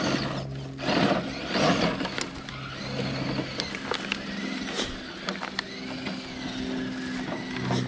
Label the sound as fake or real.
real